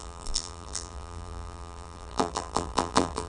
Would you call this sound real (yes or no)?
no